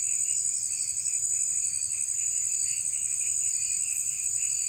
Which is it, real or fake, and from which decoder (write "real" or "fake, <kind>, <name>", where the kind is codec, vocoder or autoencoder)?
real